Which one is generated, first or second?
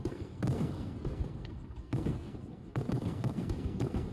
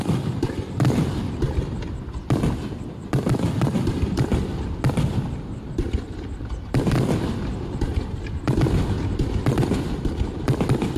first